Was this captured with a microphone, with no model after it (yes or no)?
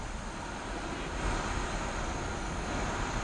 yes